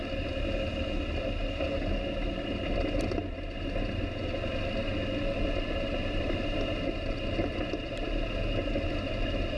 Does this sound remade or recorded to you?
recorded